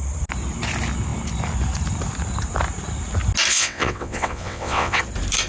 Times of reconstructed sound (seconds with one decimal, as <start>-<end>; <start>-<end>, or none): 3.5-5.0